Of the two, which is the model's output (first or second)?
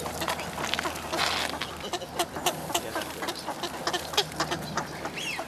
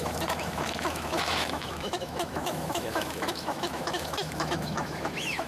second